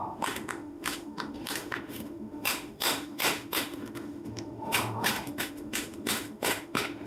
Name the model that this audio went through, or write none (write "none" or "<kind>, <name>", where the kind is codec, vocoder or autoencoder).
autoencoder, DAC-VAE